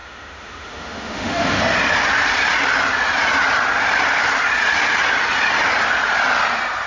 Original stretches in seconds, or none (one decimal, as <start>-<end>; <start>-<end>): 1.6-6.9